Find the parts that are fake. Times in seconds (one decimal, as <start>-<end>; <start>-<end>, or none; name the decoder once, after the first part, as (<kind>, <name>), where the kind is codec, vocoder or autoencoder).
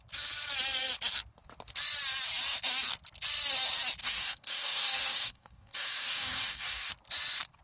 4.0-6.9 (codec, DAC)